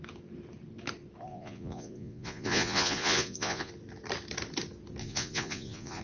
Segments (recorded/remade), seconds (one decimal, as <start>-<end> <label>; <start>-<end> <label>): 0.0-1.3 recorded; 1.3-3.7 remade; 3.7-5.0 recorded; 5.0-6.0 remade